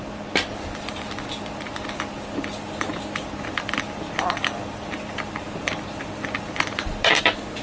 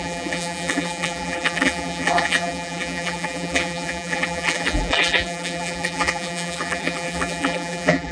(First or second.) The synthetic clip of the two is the second